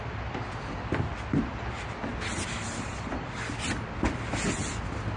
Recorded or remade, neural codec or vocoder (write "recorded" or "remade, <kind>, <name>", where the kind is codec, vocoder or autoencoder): recorded